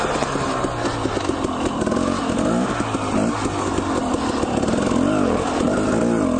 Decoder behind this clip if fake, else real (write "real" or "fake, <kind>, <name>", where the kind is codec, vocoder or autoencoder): real